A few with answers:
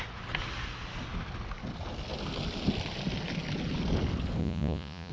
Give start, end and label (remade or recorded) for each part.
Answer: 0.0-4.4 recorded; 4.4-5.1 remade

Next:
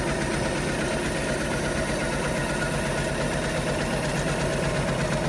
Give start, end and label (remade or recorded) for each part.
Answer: 0.0-5.3 recorded